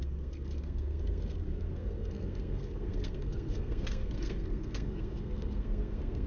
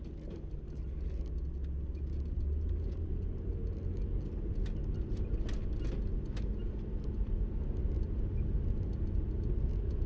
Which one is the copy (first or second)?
first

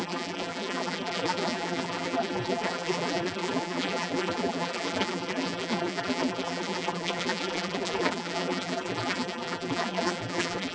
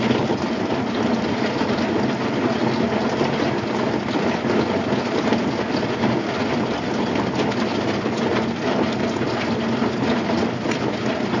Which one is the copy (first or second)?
first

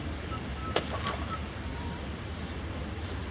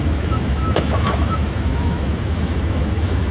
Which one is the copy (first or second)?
second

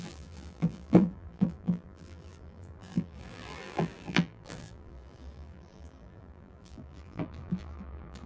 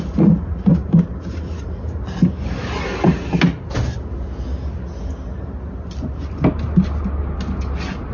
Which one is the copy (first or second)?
first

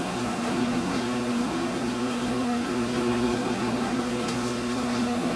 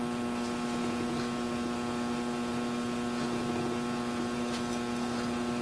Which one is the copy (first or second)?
first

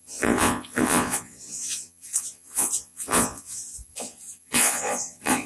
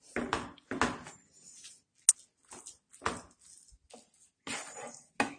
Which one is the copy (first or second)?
first